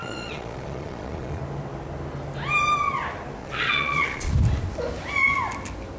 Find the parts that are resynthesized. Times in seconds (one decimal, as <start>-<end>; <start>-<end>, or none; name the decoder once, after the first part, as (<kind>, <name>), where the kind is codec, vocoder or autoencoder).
0.0-1.4 (vocoder, Vocos); 3.4-4.3